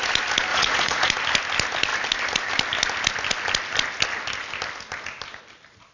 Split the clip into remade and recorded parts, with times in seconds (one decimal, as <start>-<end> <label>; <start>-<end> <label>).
0.0-0.5 recorded; 0.5-1.1 remade; 1.1-5.9 recorded